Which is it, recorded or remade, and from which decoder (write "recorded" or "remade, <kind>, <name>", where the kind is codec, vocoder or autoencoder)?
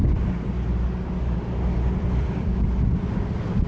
recorded